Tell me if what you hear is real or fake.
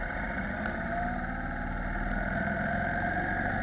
real